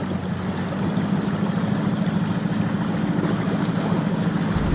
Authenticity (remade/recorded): recorded